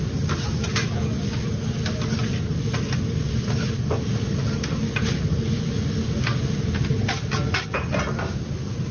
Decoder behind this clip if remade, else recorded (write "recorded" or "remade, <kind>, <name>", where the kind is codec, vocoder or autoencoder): recorded